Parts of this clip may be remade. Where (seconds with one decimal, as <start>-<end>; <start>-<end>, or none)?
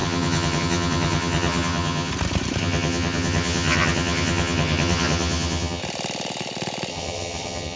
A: 0.0-2.1; 2.6-5.8; 6.9-7.8